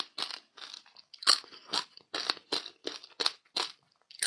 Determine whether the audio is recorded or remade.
recorded